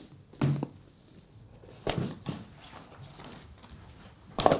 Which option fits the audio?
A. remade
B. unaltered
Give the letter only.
B